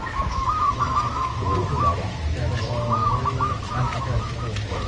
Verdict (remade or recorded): remade